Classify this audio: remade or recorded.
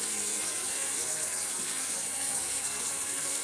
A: remade